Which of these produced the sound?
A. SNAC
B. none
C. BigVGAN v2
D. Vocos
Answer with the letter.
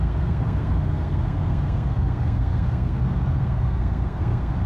A